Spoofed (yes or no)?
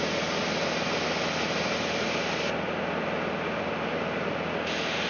no